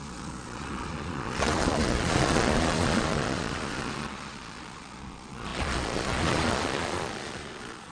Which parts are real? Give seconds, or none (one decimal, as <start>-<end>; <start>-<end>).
none